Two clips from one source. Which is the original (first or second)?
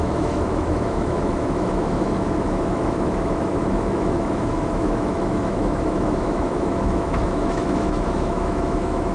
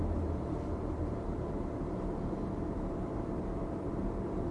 second